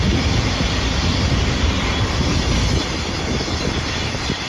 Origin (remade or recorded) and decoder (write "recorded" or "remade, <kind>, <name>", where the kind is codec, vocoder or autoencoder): remade, vocoder, BigVGAN v2